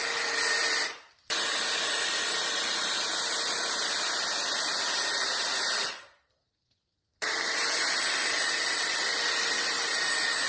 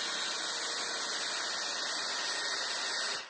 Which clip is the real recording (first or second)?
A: second